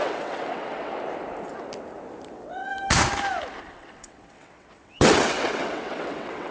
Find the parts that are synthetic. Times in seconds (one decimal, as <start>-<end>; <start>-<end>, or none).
0.0-0.9; 2.3-2.7; 3.6-6.5